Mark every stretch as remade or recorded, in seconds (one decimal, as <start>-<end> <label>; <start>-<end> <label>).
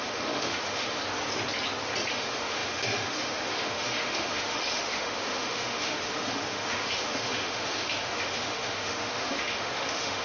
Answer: 0.0-1.0 remade; 1.0-2.1 recorded; 2.1-10.2 remade